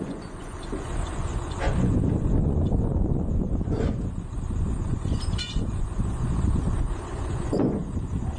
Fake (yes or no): yes